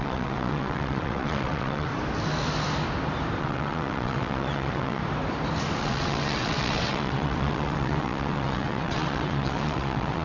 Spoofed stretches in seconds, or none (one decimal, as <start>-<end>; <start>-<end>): 0.0-1.9; 3.4-5.0; 5.8-10.2